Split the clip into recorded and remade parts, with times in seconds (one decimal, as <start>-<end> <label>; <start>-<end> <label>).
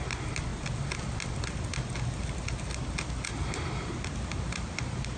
0.0-5.2 recorded